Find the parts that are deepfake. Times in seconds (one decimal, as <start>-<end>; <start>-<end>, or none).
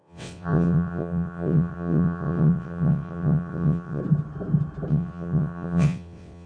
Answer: 0.0-4.0; 4.9-6.5